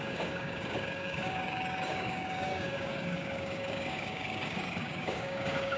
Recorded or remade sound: remade